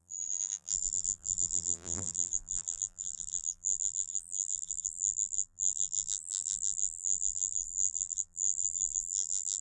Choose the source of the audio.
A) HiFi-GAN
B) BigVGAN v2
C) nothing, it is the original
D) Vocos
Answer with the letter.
B